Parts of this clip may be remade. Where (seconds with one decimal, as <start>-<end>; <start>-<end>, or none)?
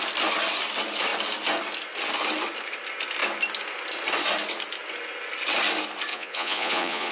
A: 6.1-7.1